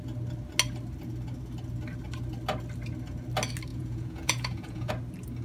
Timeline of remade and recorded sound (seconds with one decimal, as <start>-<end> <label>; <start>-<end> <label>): 0.0-3.7 recorded; 3.7-4.9 remade; 4.9-5.4 recorded